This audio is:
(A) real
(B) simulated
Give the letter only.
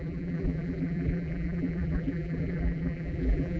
B